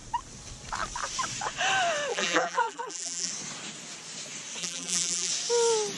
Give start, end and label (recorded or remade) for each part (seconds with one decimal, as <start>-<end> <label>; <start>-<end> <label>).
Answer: 0.0-2.1 recorded; 2.1-3.3 remade; 3.3-4.6 recorded; 4.6-5.3 remade; 5.3-6.0 recorded